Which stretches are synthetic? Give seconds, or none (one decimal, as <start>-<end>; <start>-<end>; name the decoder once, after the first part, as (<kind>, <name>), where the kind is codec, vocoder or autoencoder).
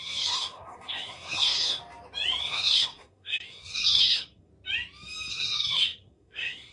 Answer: 0.0-1.8 (codec, SNAC); 2.4-4.5; 5.3-6.7